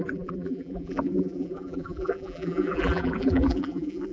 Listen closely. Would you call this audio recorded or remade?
remade